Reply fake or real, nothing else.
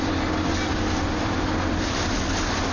fake